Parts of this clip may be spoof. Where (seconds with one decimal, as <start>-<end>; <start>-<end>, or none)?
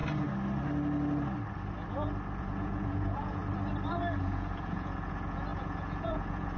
2.4-3.4; 4.2-6.6